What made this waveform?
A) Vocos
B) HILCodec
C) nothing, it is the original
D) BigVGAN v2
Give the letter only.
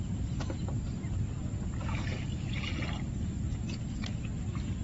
C